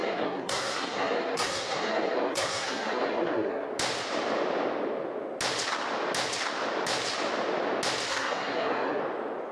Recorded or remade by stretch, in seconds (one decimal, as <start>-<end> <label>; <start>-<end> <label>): 0.0-3.7 remade; 3.7-8.1 recorded; 8.1-9.0 remade; 9.0-9.5 recorded